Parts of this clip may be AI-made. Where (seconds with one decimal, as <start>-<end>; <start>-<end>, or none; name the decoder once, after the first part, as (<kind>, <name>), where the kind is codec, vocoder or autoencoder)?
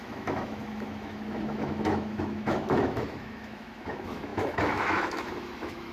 0.0-5.9 (autoencoder, DAC-VAE)